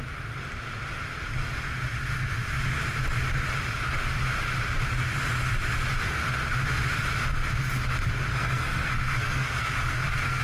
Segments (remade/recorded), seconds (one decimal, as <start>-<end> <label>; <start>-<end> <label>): 0.0-8.3 recorded; 8.3-10.4 remade